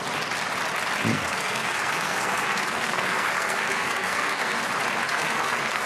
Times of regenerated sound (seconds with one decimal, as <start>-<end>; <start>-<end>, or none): 1.1-4.6; 5.0-5.9